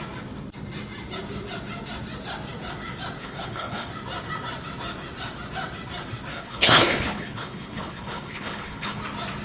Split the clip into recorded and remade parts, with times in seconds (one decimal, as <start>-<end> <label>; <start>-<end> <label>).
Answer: 0.0-3.2 recorded; 3.2-3.9 remade; 3.9-6.3 recorded; 6.3-9.0 remade; 9.0-9.4 recorded